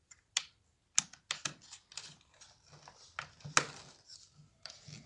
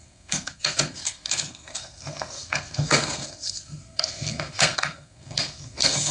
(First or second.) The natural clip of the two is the first